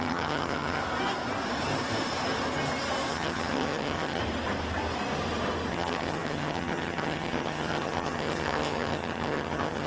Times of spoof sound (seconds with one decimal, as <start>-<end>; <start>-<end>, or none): 0.0-0.8; 3.1-4.2; 5.7-9.9